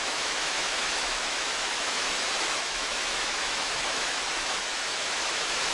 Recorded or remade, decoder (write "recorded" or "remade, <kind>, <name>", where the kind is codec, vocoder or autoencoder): remade, autoencoder, DAC-VAE